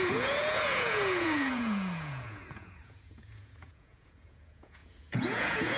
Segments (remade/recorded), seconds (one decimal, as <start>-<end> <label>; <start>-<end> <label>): 0.0-5.8 remade